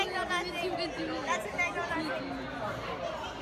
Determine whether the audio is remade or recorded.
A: recorded